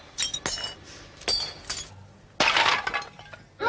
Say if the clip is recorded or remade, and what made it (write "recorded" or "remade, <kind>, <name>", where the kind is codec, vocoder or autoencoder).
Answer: recorded